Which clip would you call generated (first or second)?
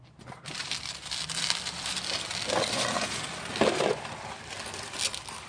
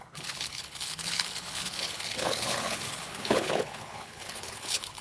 second